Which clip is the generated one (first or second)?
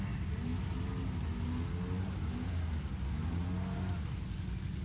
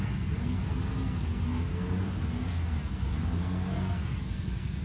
second